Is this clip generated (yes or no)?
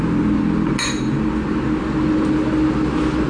no